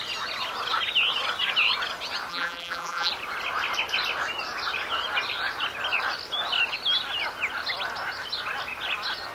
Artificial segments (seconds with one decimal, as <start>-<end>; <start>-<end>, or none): 2.3-3.1